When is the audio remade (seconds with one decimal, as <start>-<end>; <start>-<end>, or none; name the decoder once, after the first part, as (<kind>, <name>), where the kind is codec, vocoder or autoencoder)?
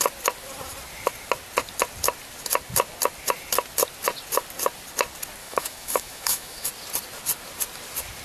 5.4-6.7 (autoencoder, DAC-VAE)